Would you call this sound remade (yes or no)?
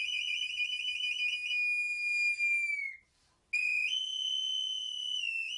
no